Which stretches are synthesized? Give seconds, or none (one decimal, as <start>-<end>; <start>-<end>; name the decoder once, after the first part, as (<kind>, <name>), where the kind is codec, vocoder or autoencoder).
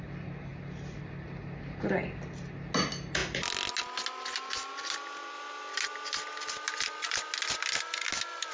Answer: none